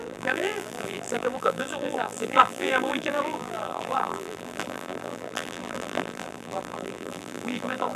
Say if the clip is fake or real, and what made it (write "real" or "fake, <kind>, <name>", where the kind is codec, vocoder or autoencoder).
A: fake, vocoder, BigVGAN v2